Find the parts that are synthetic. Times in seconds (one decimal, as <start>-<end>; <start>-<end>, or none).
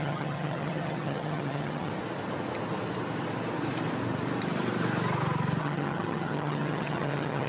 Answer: 0.0-1.9; 5.6-7.5